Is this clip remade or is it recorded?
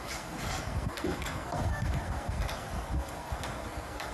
remade